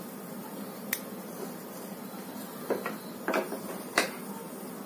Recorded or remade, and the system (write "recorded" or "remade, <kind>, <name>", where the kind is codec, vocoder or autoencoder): recorded